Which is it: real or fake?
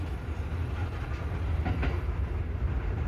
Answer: real